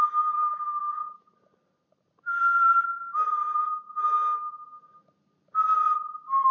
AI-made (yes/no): no